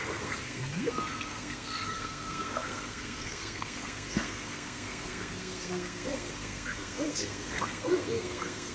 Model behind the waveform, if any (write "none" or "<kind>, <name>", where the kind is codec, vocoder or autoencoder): codec, SNAC